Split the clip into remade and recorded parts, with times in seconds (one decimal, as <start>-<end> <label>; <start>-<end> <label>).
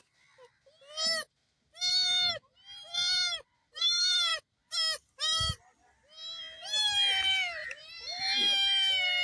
0.0-7.6 recorded; 7.6-8.2 remade; 8.2-9.2 recorded